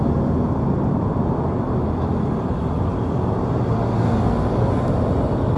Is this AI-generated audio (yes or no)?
no